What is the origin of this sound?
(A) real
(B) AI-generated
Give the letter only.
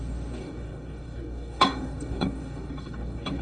B